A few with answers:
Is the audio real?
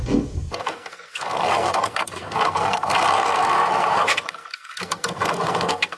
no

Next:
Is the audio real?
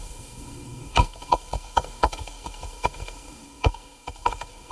no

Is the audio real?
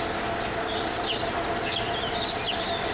yes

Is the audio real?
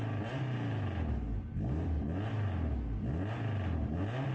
yes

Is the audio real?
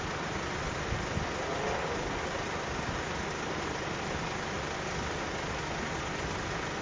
yes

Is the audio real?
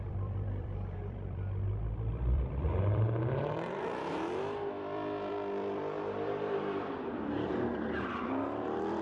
no